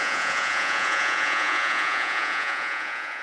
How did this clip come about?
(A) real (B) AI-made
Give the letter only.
B